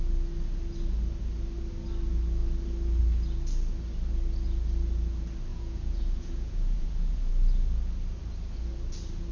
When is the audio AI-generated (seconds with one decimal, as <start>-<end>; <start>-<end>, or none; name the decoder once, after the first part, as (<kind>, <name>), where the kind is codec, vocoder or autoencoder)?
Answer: 5.5-7.3 (vocoder, Vocos)